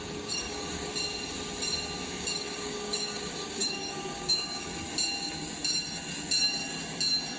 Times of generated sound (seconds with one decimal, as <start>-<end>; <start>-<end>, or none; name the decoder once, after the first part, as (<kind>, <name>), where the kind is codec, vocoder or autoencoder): 0.0-0.9 (codec, DAC); 2.1-4.7